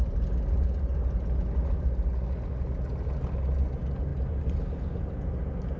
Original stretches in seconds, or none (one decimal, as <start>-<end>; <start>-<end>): 0.0-5.8